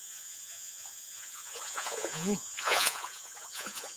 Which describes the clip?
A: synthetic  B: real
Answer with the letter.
A